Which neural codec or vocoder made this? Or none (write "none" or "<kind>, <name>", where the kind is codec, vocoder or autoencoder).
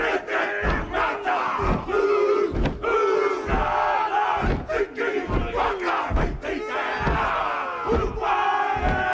none